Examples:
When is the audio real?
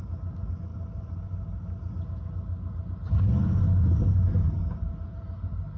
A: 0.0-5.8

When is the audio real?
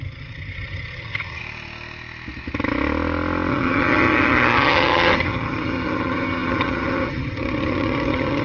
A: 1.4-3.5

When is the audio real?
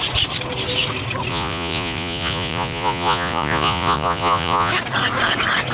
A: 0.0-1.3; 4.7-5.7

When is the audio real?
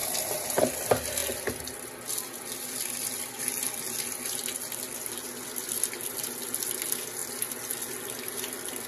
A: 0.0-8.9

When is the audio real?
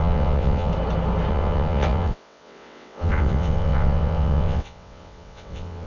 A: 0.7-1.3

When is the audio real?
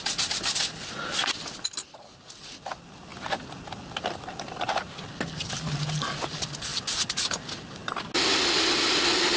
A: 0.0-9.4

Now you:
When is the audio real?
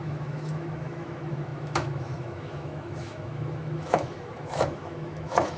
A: none